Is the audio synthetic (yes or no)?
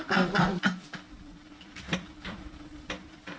yes